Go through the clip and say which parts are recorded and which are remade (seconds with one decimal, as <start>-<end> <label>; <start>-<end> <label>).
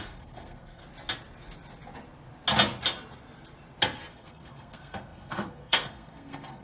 0.0-0.8 remade; 0.8-4.1 recorded; 4.1-6.6 remade